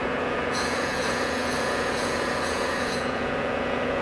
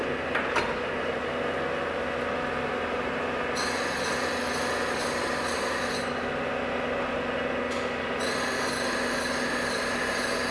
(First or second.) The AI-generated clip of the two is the first